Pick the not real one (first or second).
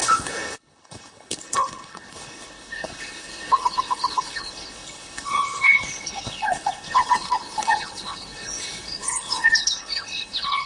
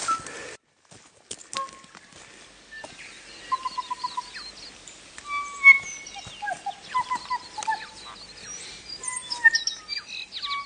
first